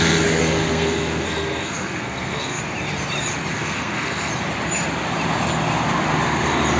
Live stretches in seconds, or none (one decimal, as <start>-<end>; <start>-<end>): 0.0-0.4; 2.6-3.5; 4.3-6.8